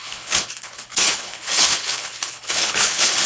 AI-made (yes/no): yes